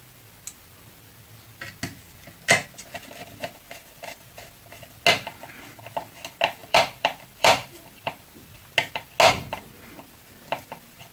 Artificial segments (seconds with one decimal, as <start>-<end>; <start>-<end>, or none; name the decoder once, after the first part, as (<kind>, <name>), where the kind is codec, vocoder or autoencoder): 6.6-8.1 (vocoder, BigVGAN v2)